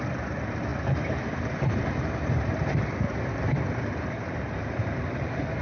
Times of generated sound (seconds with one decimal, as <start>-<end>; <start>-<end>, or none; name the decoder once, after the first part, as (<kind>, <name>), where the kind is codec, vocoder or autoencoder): 0.0-5.6 (vocoder, BigVGAN v2)